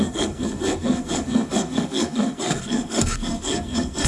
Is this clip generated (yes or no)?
yes